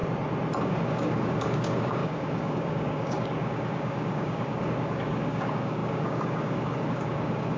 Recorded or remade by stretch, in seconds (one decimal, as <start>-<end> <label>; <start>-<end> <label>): 0.0-0.6 recorded; 0.6-7.6 remade